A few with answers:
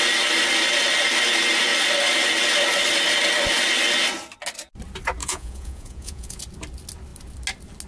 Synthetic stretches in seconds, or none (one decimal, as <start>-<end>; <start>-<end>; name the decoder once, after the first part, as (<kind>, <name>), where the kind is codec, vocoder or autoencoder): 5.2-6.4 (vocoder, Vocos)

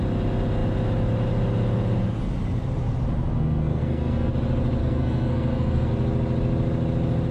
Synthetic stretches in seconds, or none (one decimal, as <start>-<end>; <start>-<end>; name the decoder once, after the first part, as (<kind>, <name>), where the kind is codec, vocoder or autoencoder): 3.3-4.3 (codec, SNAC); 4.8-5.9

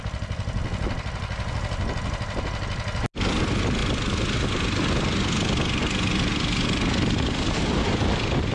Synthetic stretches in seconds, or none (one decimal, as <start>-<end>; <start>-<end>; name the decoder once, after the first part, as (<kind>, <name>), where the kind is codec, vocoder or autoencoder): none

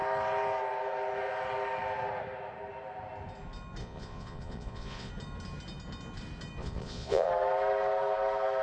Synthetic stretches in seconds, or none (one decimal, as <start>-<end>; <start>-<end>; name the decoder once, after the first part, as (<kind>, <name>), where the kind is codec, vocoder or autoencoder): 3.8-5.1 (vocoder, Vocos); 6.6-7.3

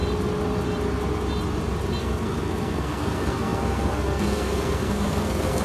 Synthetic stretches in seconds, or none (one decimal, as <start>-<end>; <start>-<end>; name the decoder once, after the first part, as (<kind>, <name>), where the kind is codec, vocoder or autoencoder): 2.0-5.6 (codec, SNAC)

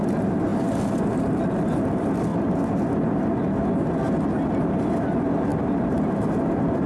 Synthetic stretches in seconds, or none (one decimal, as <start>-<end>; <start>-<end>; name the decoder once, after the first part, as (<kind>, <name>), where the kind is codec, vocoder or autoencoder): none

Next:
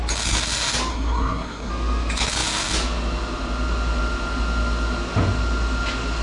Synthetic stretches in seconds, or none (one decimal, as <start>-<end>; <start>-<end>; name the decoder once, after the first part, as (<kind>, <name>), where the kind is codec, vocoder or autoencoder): 0.9-1.7 (codec, SNAC)

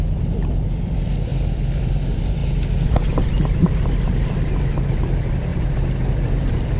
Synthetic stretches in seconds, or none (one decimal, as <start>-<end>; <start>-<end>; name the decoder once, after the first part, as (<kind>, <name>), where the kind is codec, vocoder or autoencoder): 0.0-2.4 (vocoder, BigVGAN v2); 4.6-6.8